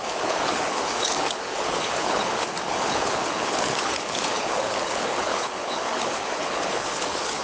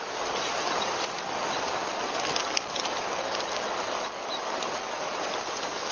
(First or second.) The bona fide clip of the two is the second